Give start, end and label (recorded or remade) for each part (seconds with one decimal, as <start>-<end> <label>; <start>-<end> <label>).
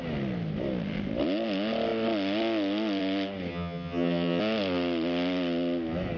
0.0-3.5 recorded; 3.5-4.4 remade; 4.4-6.2 recorded